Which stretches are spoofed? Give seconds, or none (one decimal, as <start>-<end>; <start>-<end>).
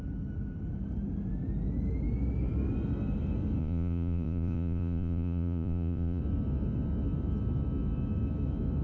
3.6-6.2